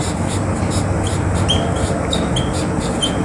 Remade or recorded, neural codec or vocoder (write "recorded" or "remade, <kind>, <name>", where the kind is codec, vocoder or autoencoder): recorded